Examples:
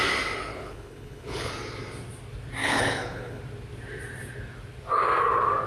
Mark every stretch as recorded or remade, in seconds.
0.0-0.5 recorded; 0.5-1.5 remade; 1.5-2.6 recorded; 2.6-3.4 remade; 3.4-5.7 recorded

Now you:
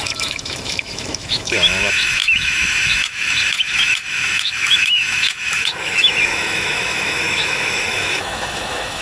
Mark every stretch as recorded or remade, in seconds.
0.0-9.0 remade

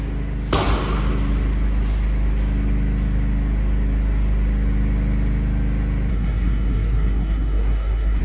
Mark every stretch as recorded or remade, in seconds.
0.0-6.1 recorded; 6.1-8.2 remade

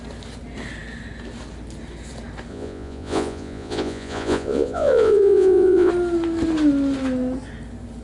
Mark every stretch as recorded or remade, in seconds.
0.0-2.5 recorded; 2.5-5.9 remade; 5.9-8.0 recorded

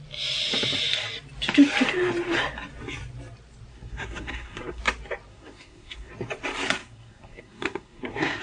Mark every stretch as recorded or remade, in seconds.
0.0-3.7 recorded; 3.7-4.8 remade; 4.8-5.3 recorded; 5.3-6.1 remade; 6.1-6.8 recorded; 6.8-8.4 remade

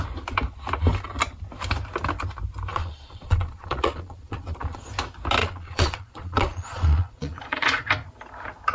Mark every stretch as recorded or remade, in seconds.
0.0-2.7 recorded; 2.7-4.9 remade; 4.9-5.4 recorded; 5.4-7.9 remade; 7.9-8.7 recorded

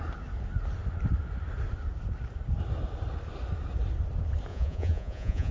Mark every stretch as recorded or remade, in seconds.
0.0-4.5 recorded; 4.5-5.5 remade